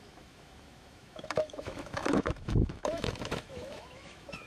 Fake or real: fake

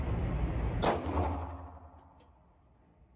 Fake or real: real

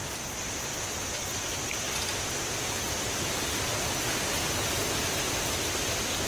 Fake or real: real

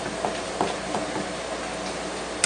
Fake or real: real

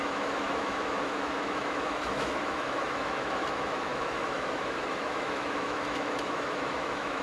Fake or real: fake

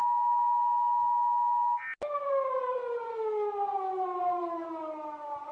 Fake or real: real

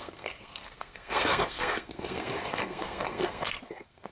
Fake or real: fake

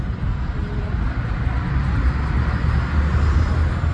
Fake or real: real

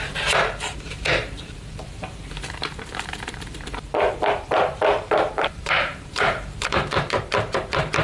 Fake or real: fake